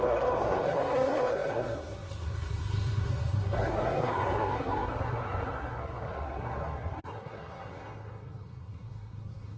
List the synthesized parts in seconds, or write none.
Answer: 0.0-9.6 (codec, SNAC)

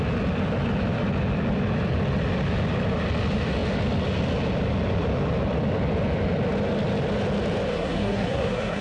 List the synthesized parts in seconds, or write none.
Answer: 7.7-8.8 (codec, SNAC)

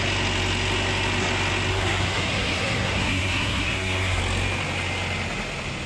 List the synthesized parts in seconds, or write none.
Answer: 1.7-4.2 (codec, SNAC)

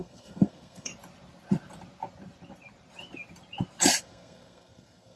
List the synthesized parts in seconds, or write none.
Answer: 0.0-0.9 (codec, SNAC); 4.0-5.2

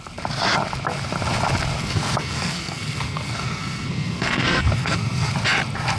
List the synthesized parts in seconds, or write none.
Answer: 1.8-5.3 (codec, SNAC)